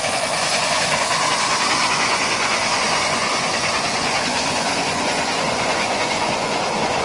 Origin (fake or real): fake